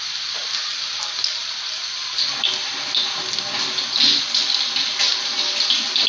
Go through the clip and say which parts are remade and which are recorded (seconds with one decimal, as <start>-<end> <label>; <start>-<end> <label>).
0.0-1.4 remade; 1.4-5.1 recorded; 5.1-6.1 remade